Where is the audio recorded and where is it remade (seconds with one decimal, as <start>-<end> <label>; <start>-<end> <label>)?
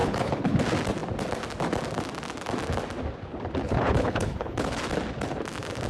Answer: 0.0-0.6 remade; 0.6-3.6 recorded; 3.6-4.8 remade; 4.8-5.9 recorded